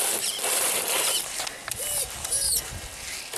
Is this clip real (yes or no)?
yes